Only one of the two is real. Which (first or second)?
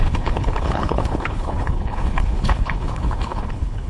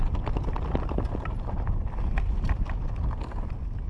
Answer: second